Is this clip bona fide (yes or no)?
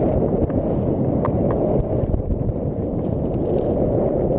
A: yes